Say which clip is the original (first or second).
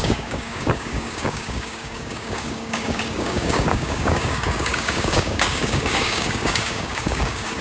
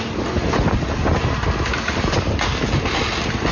second